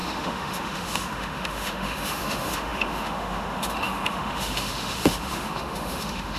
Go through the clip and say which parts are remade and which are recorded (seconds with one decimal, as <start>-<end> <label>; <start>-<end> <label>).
0.0-6.4 remade